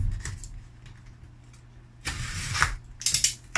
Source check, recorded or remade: recorded